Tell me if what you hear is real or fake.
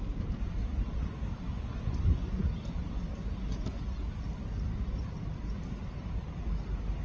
real